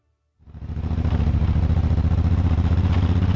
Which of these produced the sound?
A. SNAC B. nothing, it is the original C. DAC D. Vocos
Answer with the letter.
B